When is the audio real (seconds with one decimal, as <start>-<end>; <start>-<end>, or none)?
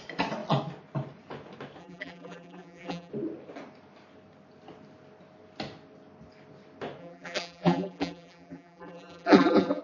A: 0.0-1.8; 3.1-7.0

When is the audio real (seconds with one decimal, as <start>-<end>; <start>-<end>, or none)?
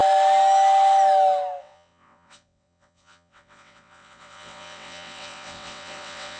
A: 0.0-1.6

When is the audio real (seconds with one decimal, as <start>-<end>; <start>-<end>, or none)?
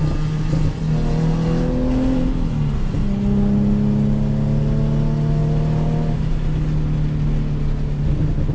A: 0.0-8.5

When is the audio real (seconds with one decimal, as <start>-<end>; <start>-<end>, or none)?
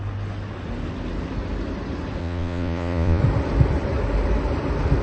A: 0.0-2.2; 3.2-5.0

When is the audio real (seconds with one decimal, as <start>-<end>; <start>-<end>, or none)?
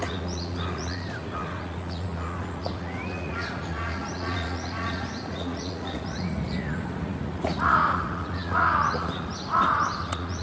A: none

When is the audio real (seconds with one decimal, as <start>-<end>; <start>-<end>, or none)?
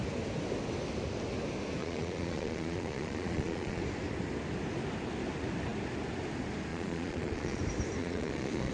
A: 0.0-1.8; 3.8-6.7; 7.6-8.0